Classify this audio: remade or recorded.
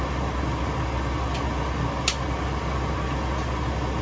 recorded